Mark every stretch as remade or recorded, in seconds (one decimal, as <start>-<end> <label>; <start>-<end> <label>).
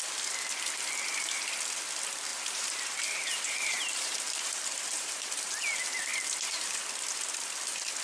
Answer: 0.0-2.3 recorded; 2.3-5.5 remade; 5.5-8.0 recorded